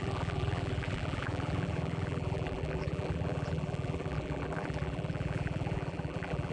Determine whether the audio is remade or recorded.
remade